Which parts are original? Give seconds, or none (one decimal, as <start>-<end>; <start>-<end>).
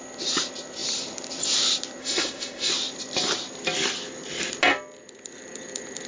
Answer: 0.0-2.0; 2.7-6.1